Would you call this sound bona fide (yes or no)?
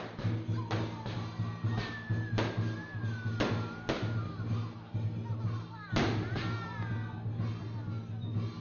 yes